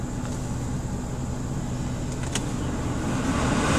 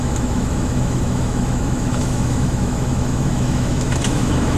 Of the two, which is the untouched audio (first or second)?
first